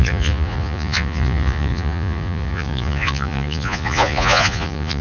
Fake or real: fake